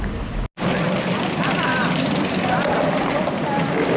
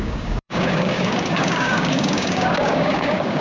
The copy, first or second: second